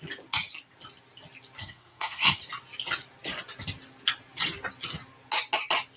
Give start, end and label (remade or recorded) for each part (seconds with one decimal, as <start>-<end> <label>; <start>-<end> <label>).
0.0-1.6 recorded; 1.6-2.4 remade; 2.4-6.0 recorded